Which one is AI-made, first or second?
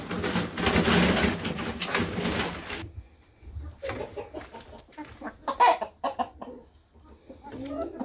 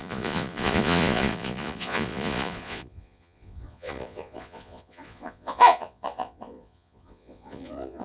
second